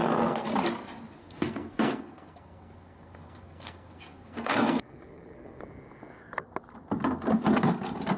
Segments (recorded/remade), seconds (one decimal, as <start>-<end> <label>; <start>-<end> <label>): 0.0-0.5 remade; 0.5-1.2 recorded; 1.2-5.6 remade; 5.6-8.2 recorded